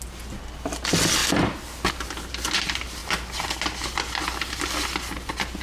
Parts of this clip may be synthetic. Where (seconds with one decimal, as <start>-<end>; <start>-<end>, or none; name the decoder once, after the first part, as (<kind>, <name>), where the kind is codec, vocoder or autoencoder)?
none